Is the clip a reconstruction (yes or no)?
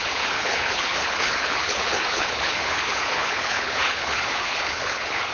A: yes